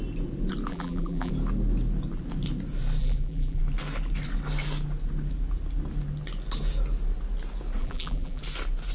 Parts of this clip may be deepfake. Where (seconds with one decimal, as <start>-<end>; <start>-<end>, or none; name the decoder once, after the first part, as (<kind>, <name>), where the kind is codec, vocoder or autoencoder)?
0.7-1.3 (vocoder, BigVGAN v2); 3.0-3.6; 7.8-8.4